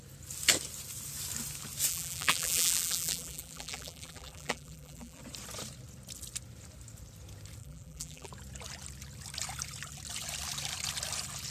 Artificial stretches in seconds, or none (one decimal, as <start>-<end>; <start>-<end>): 1.9-5.2; 7.6-8.3